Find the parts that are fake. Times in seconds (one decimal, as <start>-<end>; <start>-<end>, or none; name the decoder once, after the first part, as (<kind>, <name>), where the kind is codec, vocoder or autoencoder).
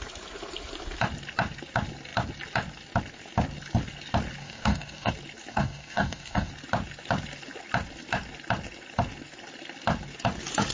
4.4-5.1 (codec, DAC); 5.5-6.5